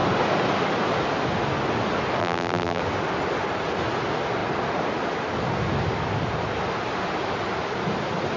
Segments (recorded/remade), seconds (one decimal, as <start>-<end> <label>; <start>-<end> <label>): 0.0-2.2 recorded; 2.2-2.8 remade; 2.8-8.4 recorded